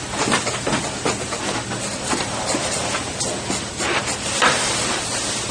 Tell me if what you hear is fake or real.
real